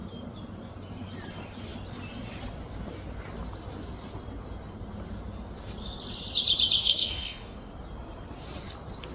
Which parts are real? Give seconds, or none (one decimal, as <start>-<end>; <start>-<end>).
0.0-6.8; 7.7-9.1